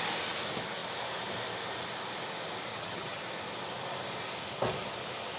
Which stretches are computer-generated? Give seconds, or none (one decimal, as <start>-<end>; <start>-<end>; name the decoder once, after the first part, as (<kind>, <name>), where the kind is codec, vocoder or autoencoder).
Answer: 2.7-3.2 (vocoder, HiFi-GAN)